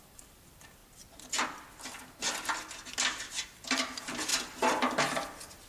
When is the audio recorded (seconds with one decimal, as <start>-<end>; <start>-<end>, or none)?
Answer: 0.8-3.3

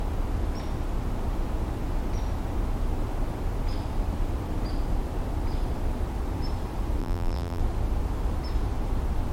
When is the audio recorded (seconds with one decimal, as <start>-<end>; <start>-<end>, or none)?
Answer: 0.0-7.0; 7.6-9.3